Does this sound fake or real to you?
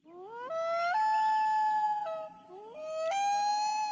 real